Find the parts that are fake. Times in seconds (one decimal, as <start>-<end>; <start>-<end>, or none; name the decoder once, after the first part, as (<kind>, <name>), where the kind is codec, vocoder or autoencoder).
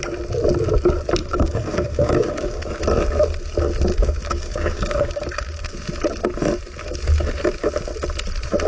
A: 1.2-2.8 (codec, DAC); 3.9-5.7